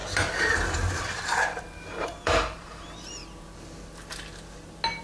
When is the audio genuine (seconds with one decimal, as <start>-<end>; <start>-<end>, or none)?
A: 3.2-5.0